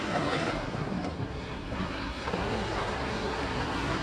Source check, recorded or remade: remade